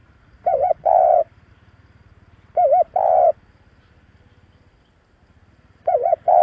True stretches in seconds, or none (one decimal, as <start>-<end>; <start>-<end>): 2.6-5.5

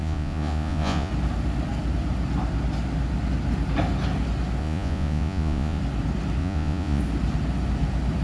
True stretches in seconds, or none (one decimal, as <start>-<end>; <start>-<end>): 1.1-4.6; 5.8-6.4; 7.0-8.2